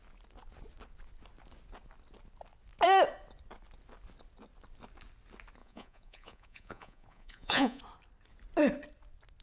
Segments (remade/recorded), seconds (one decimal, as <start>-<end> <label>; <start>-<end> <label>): 0.0-5.6 recorded; 5.6-7.8 remade; 7.8-9.4 recorded